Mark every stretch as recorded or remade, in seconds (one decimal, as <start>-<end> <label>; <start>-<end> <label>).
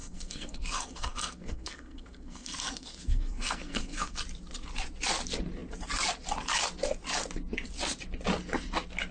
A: 0.0-4.2 remade; 4.2-9.1 recorded